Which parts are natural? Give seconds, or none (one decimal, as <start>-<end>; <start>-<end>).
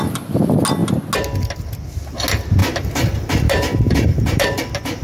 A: 0.0-2.6; 4.6-5.0